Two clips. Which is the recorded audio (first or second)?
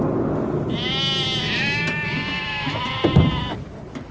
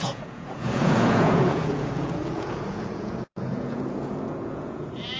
first